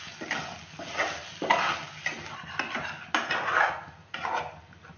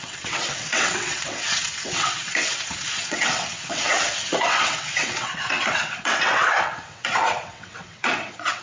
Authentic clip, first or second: first